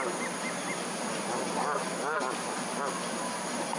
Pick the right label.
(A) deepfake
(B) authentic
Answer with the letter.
B